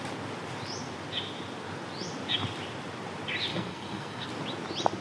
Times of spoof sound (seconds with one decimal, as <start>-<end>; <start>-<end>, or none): 3.5-4.3

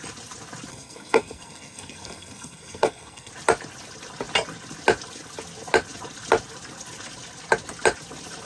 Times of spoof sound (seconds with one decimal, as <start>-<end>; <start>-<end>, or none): 0.7-3.3

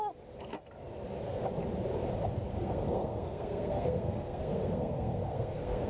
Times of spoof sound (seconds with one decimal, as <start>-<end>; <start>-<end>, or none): 2.5-5.9

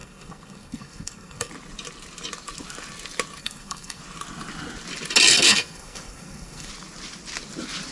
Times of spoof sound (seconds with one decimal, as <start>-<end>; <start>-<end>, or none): 0.0-1.5; 3.4-4.0; 5.3-6.7